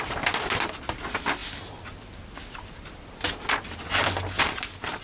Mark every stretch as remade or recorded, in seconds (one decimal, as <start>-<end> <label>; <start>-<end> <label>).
0.0-5.0 recorded